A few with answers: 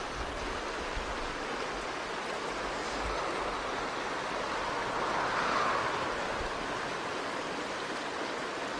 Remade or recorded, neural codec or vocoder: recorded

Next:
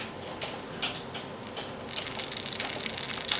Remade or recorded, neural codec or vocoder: recorded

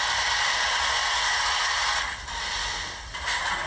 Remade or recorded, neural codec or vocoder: recorded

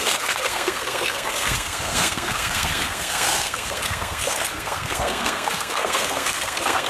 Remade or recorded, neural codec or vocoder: remade, codec, SNAC